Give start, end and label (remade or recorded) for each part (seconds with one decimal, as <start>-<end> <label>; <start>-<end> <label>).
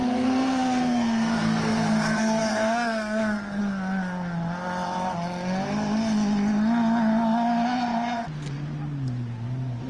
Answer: 0.0-3.6 remade; 3.6-9.9 recorded